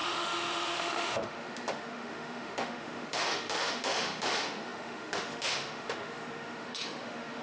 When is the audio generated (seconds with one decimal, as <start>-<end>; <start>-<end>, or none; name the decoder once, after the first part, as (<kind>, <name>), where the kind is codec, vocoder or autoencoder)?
0.0-7.4 (autoencoder, DAC-VAE)